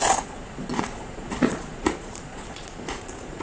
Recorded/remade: remade